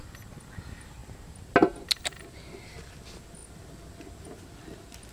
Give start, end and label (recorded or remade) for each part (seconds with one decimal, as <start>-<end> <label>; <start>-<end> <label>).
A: 0.0-5.1 recorded